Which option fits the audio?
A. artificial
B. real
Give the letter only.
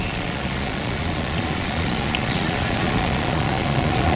A